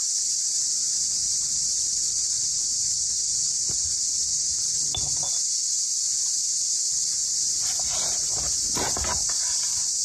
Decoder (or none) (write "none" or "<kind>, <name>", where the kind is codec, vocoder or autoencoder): none